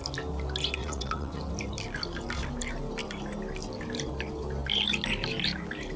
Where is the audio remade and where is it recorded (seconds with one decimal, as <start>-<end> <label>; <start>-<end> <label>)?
0.0-0.8 recorded; 0.8-1.4 remade; 1.4-6.0 recorded